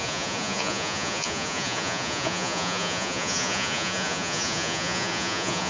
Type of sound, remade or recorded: remade